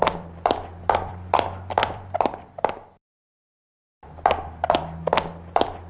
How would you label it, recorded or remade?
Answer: remade